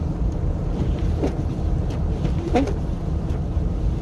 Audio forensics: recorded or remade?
remade